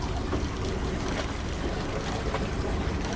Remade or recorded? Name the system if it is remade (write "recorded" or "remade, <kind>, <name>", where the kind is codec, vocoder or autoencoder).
recorded